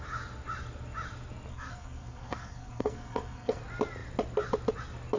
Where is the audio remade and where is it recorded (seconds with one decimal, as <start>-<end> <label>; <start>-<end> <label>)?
0.0-1.5 recorded; 1.5-3.6 remade; 3.6-5.2 recorded

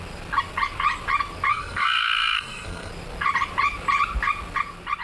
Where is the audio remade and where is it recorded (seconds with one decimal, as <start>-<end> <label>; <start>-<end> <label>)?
0.0-1.5 recorded; 1.5-2.9 remade; 2.9-5.0 recorded

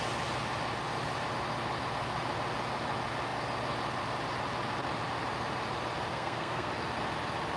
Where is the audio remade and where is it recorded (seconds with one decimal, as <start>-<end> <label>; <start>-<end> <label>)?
0.0-6.1 recorded; 6.1-6.7 remade; 6.7-7.6 recorded